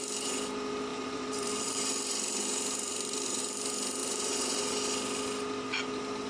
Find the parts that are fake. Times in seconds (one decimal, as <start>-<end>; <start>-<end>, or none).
0.9-3.4; 4.0-4.6